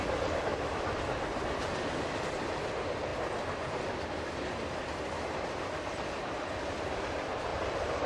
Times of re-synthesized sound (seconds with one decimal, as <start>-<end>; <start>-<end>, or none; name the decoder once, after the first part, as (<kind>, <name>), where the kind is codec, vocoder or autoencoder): 0.5-1.0 (vocoder, BigVGAN v2); 3.1-6.6; 7.5-8.1